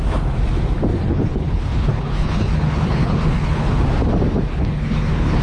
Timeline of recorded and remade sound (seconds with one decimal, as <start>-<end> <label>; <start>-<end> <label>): 0.0-0.9 recorded; 0.9-3.8 remade; 3.8-4.5 recorded; 4.5-5.4 remade